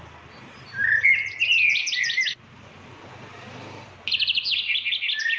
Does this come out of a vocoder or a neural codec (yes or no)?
no